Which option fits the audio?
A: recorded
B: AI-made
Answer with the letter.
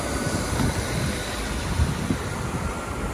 A